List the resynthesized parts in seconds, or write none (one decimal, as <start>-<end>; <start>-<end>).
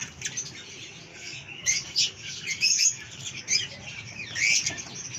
1.1-3.4